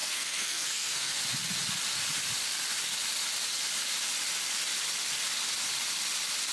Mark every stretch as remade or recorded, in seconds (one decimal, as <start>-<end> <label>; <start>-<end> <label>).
0.0-1.2 remade; 1.2-6.5 recorded